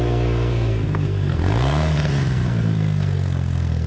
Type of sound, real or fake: fake